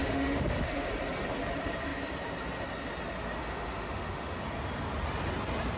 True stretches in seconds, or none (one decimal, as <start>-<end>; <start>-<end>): 0.9-3.4; 4.4-5.8